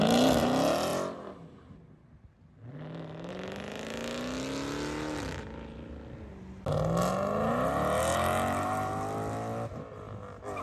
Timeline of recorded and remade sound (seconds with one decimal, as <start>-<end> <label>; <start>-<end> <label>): 0.0-10.6 recorded